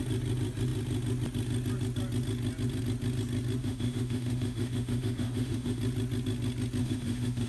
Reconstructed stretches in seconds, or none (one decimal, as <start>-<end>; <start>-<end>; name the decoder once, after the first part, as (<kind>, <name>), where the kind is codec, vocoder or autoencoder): 3.6-5.8 (autoencoder, DAC-VAE); 6.8-7.5